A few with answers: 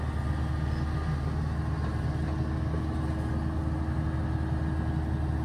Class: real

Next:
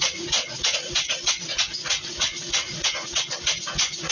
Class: fake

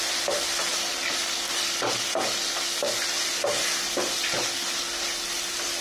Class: real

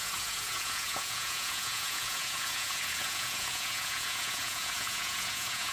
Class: fake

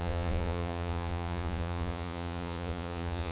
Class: fake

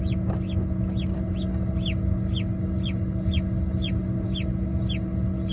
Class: real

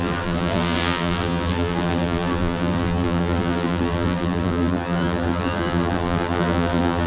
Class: fake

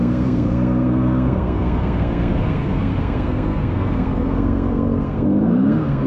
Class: fake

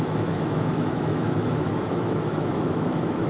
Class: fake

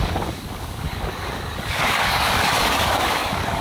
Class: fake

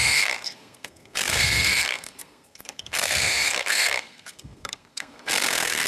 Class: fake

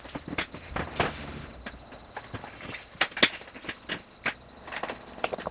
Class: real